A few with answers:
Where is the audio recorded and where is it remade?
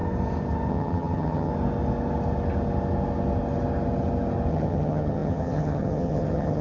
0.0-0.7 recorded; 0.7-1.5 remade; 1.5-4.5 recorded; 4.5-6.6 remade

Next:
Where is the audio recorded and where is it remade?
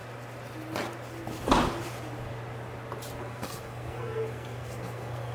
0.0-3.2 recorded; 3.2-5.3 remade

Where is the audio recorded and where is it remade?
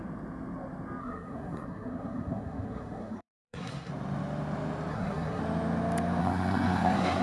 0.0-1.0 recorded; 1.0-3.9 remade; 3.9-4.9 recorded; 4.9-5.4 remade; 5.4-6.2 recorded; 6.2-7.2 remade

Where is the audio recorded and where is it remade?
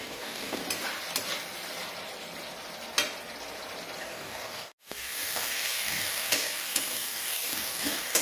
0.0-0.6 remade; 0.6-4.0 recorded; 4.0-8.2 remade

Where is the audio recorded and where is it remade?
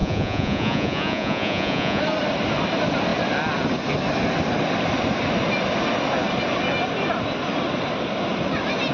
0.0-2.0 remade; 2.0-8.9 recorded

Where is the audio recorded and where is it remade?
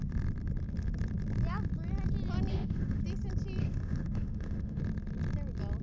0.0-2.5 recorded; 2.5-3.0 remade; 3.0-3.6 recorded; 3.6-4.8 remade; 4.8-5.8 recorded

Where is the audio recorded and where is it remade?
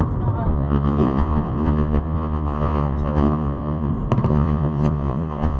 0.0-0.5 recorded; 0.5-3.9 remade; 3.9-4.3 recorded; 4.3-5.6 remade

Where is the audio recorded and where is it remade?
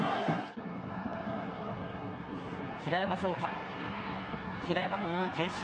0.0-5.6 remade